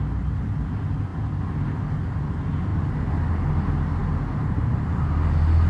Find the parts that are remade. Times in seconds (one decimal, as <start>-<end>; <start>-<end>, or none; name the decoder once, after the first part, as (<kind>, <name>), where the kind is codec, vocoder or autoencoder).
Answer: 4.0-5.0 (vocoder, BigVGAN v2)